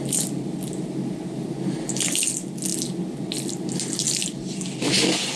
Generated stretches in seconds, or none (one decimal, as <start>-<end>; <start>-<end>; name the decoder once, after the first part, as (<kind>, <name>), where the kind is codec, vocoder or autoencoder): none